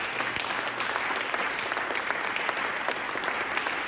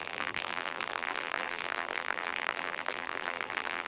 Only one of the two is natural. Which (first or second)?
first